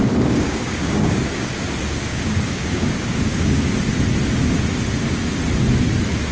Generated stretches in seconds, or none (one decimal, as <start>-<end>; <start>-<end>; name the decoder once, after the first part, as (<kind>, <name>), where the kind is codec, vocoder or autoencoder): 0.0-1.6 (codec, DAC); 2.1-3.7

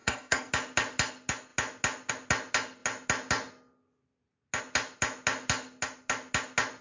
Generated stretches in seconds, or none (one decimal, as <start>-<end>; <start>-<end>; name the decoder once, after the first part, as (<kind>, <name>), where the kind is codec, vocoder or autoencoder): 0.0-0.5 (codec, SNAC)

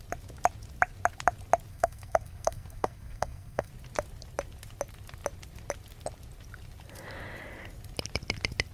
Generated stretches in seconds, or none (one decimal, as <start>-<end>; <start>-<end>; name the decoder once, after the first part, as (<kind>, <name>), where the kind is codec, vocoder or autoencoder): 1.7-3.7 (codec, SNAC)

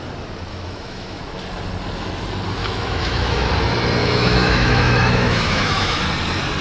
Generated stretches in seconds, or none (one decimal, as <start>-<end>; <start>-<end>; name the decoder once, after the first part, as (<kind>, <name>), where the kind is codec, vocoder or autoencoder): 0.5-1.2 (autoencoder, DAC-VAE); 2.6-3.5; 4.0-6.0

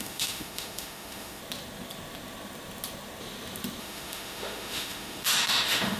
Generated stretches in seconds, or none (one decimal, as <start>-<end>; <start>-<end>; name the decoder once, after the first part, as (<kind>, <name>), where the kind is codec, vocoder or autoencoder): 0.0-1.4 (autoencoder, DAC-VAE); 3.8-6.0

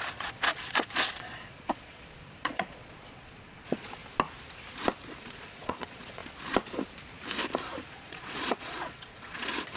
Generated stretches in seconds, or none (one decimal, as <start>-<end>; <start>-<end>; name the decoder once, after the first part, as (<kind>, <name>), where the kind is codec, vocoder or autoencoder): 0.0-4.0 (vocoder, Vocos); 5.2-6.2; 7.9-9.8